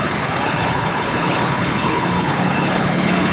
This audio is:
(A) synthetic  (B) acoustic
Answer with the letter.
A